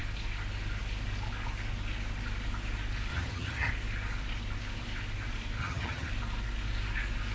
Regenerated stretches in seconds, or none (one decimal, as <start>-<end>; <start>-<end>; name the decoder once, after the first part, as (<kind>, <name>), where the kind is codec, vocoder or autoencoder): 3.1-3.7 (vocoder, HiFi-GAN); 5.6-6.1